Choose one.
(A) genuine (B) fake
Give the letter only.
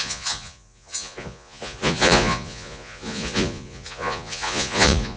B